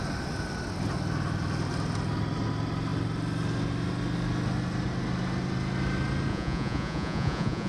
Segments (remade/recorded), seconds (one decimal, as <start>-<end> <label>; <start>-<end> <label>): 0.0-6.3 recorded; 6.3-7.7 remade